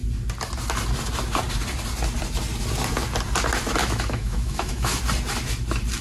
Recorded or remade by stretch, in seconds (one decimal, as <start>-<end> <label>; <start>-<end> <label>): 0.0-3.8 recorded; 3.8-5.0 remade; 5.0-6.0 recorded